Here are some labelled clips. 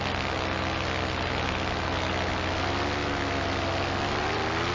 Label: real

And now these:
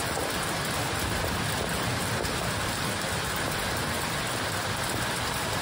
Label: real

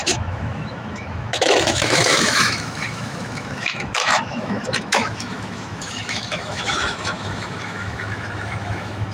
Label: fake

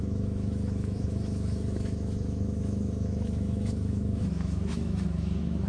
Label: fake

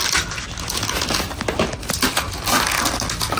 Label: real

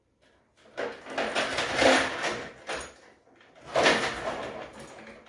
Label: real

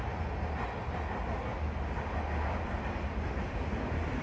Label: real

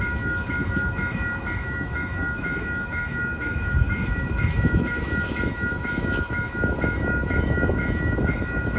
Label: fake